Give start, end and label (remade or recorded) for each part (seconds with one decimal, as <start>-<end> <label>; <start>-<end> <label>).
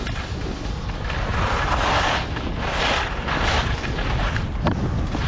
0.0-5.3 recorded